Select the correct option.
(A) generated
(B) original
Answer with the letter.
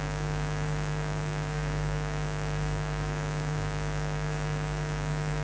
A